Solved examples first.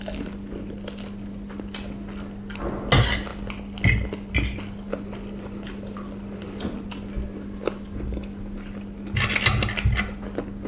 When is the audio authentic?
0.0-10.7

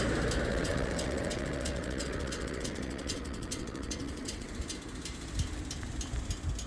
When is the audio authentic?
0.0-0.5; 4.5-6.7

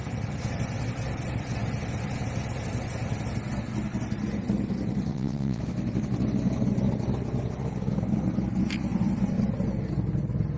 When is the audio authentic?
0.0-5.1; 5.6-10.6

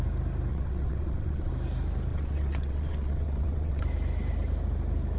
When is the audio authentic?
0.0-0.5; 1.5-2.1; 3.8-5.2